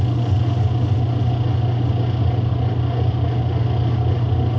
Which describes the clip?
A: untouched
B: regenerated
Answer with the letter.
A